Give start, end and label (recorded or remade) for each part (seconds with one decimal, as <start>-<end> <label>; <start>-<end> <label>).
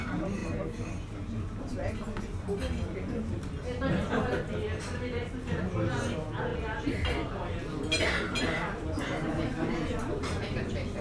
0.0-11.0 recorded